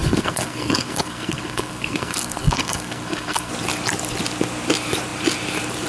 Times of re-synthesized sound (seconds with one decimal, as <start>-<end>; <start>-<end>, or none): 0.0-3.5